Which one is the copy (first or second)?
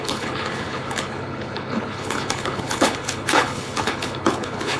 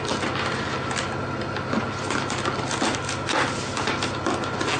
first